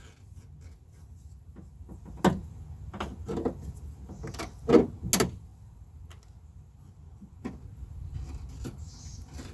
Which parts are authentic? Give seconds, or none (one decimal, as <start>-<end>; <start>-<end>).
0.0-9.5